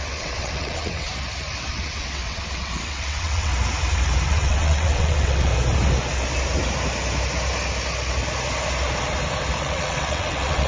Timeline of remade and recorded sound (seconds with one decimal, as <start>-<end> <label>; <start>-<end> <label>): 0.0-1.1 remade; 1.1-1.7 recorded; 1.7-3.5 remade; 3.5-4.3 recorded; 4.3-5.5 remade; 5.5-9.6 recorded; 9.6-10.7 remade